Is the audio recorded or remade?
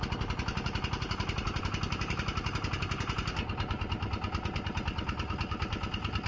recorded